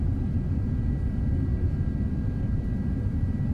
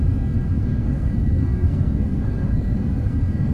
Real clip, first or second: first